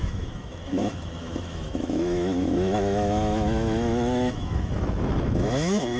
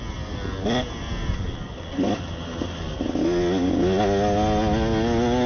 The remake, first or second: first